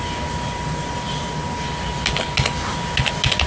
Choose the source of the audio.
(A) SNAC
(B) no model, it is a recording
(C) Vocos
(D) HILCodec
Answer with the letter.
B